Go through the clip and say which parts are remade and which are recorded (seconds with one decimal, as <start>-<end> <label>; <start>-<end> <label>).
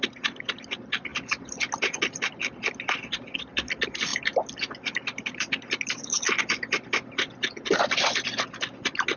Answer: 0.0-9.2 recorded